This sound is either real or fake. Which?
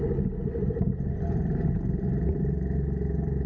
real